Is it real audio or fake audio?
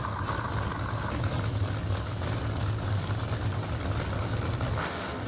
real